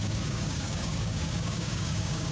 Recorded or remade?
remade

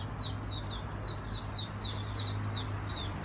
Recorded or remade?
recorded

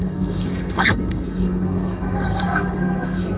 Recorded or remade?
remade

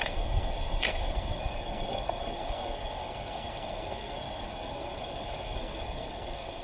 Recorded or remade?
remade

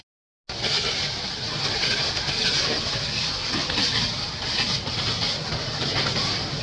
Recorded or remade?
recorded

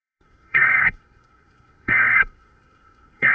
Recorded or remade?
remade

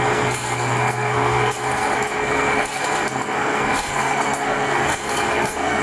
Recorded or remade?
remade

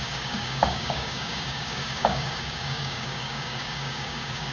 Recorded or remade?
remade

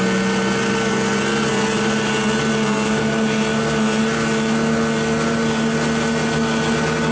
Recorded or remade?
recorded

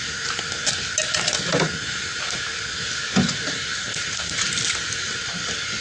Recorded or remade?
recorded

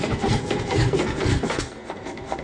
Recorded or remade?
remade